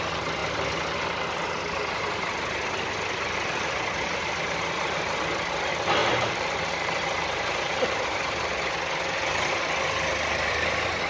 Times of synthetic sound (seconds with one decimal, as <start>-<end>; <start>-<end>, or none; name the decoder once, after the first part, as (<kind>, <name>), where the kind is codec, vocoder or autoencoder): 6.0-8.7 (vocoder, BigVGAN v2)